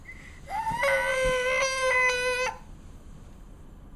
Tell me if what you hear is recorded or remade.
recorded